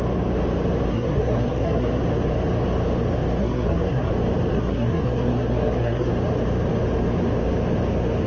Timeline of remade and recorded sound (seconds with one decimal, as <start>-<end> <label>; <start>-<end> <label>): 0.0-0.9 recorded; 0.9-2.0 remade; 2.0-3.4 recorded; 3.4-4.1 remade; 4.1-4.5 recorded; 4.5-6.1 remade; 6.1-8.3 recorded